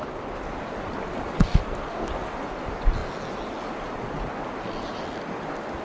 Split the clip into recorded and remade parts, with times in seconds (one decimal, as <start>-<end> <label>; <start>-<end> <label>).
0.0-1.4 recorded; 1.4-2.1 remade; 2.1-5.8 recorded